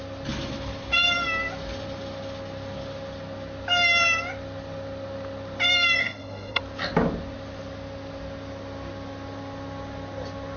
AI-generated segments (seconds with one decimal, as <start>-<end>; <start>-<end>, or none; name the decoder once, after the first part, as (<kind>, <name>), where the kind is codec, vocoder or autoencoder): 6.0-6.6 (codec, SNAC)